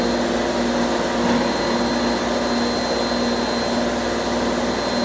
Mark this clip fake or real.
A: real